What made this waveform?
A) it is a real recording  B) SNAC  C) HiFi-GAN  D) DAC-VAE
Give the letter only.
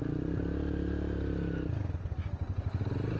A